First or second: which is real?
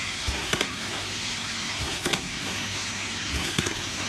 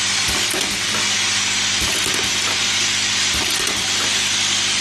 second